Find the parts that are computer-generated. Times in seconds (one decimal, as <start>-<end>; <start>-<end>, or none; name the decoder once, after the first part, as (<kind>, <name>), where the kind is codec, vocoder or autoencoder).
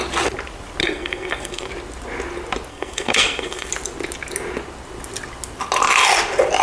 0.8-1.7 (codec, SNAC); 2.7-3.7